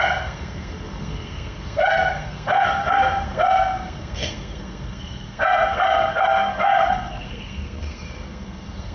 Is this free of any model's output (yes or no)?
no